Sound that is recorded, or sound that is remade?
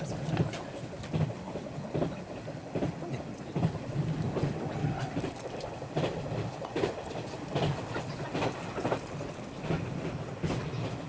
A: recorded